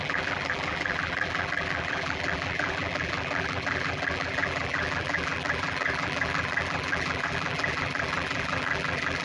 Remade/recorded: remade